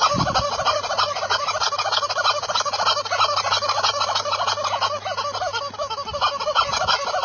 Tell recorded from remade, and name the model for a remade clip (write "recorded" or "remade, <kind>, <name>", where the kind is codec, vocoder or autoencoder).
recorded